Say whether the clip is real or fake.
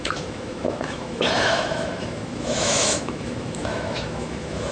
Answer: fake